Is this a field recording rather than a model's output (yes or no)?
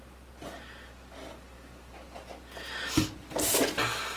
yes